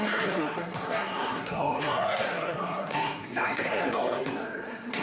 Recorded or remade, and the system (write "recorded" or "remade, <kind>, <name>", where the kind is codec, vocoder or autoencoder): remade, codec, SNAC